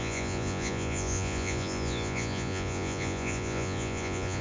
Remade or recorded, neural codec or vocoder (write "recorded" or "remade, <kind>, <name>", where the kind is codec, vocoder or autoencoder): remade, vocoder, Vocos